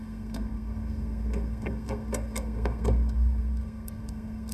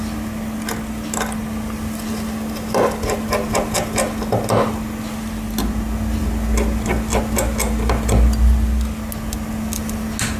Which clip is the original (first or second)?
second